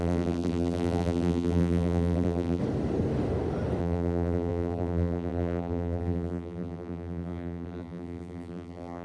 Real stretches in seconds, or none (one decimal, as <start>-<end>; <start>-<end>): 2.6-3.8